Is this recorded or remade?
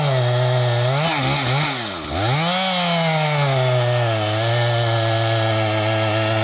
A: recorded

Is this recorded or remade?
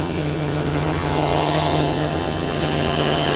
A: remade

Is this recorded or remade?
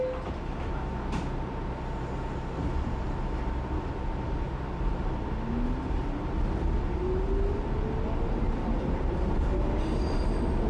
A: recorded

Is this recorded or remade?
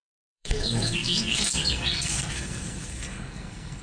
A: remade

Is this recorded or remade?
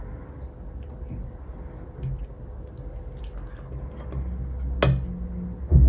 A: recorded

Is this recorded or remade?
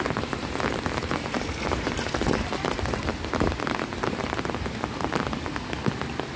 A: recorded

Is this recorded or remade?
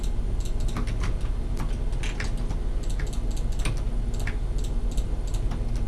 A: recorded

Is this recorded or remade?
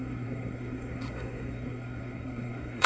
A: remade